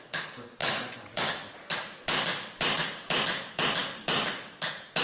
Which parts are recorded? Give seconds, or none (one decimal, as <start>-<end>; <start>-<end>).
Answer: 0.0-0.6; 1.2-5.0